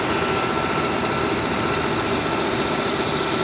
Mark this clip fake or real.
real